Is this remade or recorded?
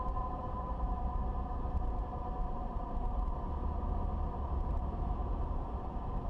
remade